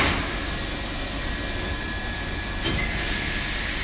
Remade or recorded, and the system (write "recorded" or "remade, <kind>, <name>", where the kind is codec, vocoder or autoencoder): recorded